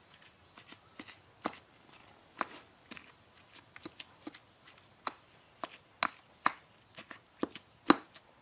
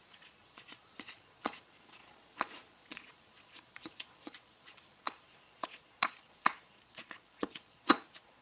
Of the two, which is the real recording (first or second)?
first